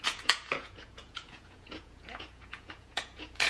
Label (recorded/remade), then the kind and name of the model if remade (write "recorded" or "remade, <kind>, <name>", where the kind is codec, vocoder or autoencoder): remade, vocoder, Vocos